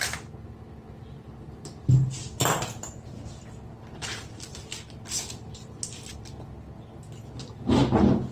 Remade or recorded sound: recorded